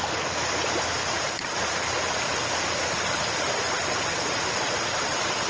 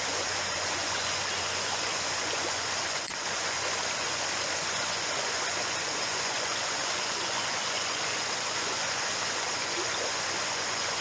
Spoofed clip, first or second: second